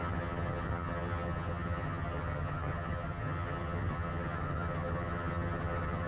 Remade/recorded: remade